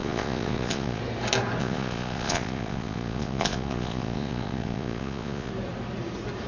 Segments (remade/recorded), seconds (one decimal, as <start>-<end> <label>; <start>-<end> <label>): 0.0-1.0 remade; 1.0-1.6 recorded; 1.6-5.5 remade; 5.5-6.5 recorded